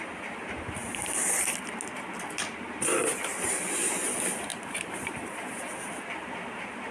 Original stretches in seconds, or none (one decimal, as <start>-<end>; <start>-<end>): 0.0-4.5; 5.3-6.9